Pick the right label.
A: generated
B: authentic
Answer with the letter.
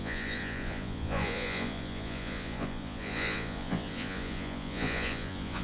A